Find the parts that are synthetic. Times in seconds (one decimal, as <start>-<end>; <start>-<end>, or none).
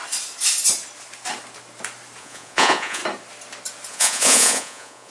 2.2-3.0; 3.9-5.1